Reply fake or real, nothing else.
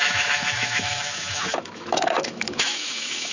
fake